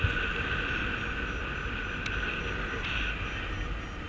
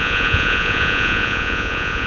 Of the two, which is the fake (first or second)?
second